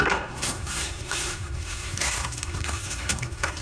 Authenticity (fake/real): fake